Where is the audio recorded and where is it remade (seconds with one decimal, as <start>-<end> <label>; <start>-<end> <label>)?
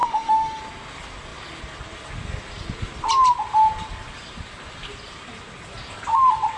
0.0-0.6 remade; 0.6-6.6 recorded